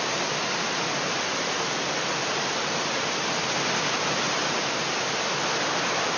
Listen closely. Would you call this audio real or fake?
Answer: real